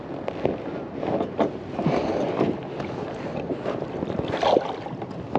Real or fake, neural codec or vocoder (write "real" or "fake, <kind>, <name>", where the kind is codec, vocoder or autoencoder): real